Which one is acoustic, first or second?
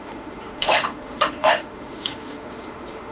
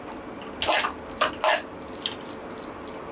second